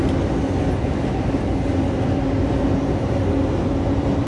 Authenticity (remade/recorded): recorded